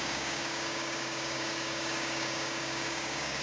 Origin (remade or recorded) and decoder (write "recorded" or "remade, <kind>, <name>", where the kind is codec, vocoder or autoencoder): remade, codec, DAC